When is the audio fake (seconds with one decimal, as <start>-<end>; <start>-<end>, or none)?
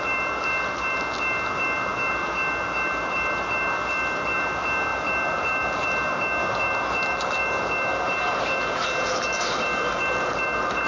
none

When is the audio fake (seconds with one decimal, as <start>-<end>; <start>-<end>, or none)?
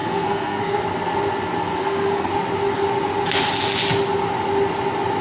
0.0-0.8; 1.7-2.3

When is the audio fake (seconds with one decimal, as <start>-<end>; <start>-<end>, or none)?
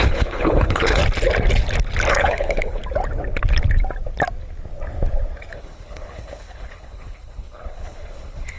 0.0-1.0; 2.1-2.8; 5.5-8.6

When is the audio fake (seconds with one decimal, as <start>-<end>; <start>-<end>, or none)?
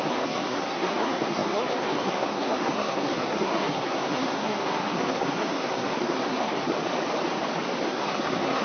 0.0-6.8; 7.8-8.6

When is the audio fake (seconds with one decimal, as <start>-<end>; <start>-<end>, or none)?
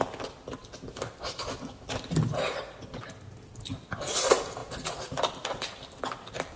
none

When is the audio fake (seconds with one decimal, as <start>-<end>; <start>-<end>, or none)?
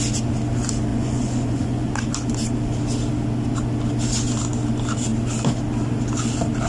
0.9-1.9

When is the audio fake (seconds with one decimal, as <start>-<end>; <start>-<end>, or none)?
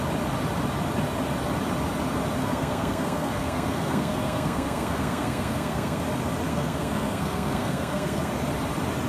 2.4-6.0; 6.5-8.3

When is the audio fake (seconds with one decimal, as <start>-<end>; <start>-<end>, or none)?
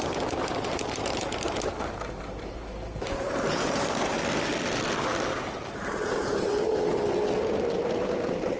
0.0-4.2; 5.3-6.9; 7.7-8.6